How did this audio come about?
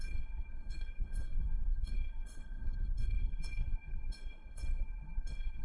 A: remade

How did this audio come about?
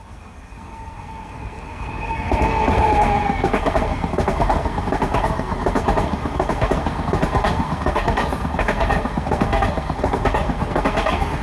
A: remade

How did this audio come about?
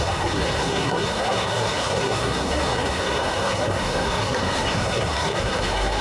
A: remade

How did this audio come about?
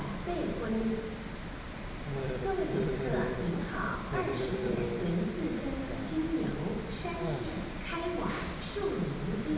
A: recorded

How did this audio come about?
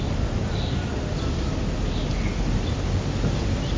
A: recorded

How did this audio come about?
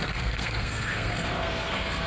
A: remade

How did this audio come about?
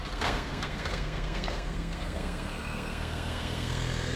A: remade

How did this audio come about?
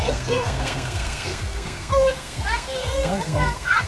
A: remade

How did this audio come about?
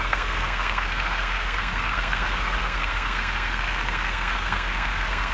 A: remade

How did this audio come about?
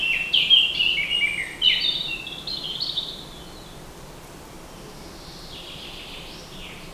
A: recorded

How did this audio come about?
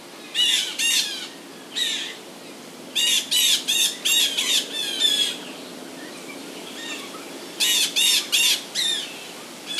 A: recorded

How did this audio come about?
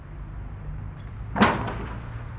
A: recorded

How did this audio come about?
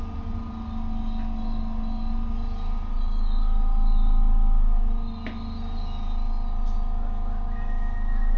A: recorded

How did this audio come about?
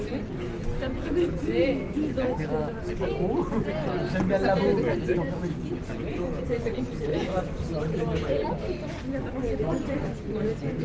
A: recorded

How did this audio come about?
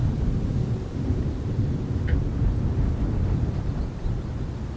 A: recorded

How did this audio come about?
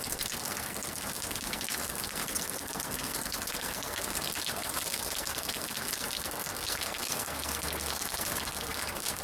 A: remade